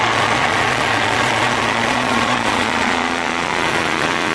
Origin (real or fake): fake